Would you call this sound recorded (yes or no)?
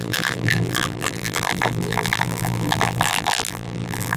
no